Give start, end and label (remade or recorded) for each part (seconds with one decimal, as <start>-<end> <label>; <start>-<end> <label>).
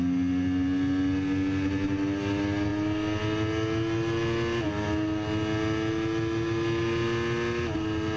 0.0-8.2 recorded